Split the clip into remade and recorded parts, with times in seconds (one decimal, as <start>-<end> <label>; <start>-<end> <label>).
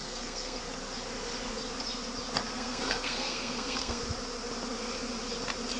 0.0-0.6 remade; 0.6-2.5 recorded; 2.5-4.0 remade; 4.0-5.8 recorded